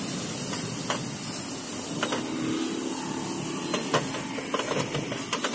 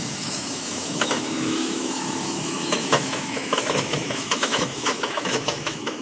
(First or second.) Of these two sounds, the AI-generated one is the second